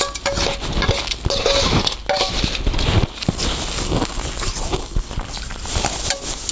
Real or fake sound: real